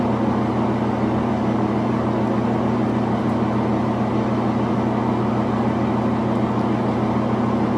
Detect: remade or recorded recorded